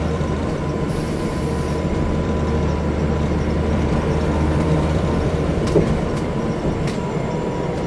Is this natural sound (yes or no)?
no